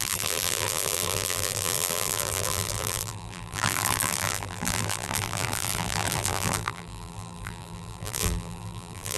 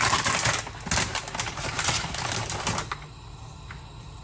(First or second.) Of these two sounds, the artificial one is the first